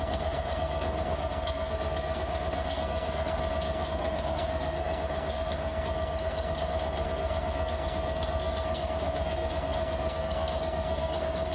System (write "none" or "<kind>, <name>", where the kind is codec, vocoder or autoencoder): codec, SNAC